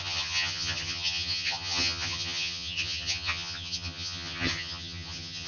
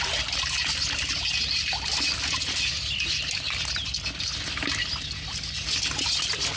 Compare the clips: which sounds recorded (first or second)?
second